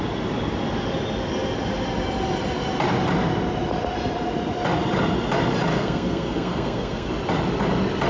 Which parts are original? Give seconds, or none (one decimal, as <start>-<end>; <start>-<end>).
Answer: 0.0-5.7; 7.1-8.1